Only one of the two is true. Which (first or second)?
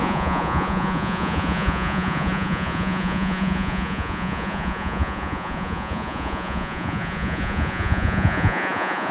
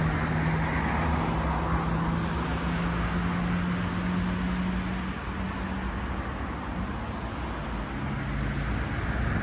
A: second